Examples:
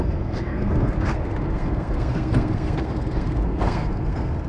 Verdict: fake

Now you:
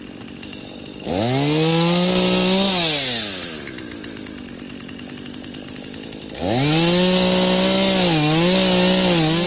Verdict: real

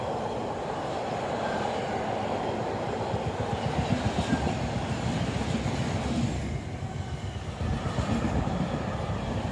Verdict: real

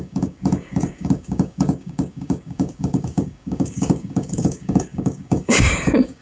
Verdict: fake